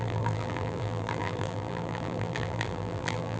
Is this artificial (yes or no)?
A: yes